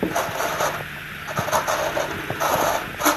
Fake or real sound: real